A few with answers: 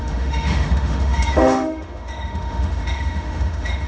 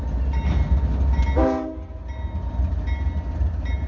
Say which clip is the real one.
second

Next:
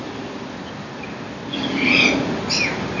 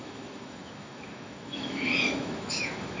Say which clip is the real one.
first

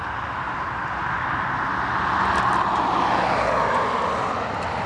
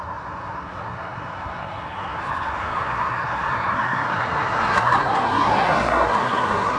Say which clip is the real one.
first